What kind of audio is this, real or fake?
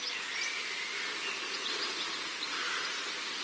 real